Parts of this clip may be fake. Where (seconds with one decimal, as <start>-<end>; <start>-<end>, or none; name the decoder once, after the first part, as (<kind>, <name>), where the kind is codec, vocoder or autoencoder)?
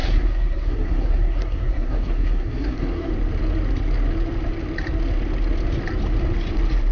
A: 0.0-3.1 (codec, SNAC)